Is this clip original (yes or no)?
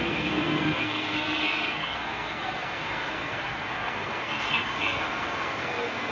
no